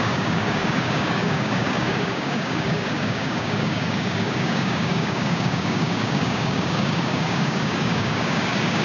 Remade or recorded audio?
remade